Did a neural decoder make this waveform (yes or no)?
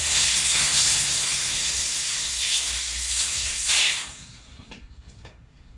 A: yes